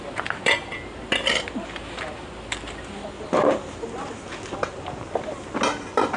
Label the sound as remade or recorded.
recorded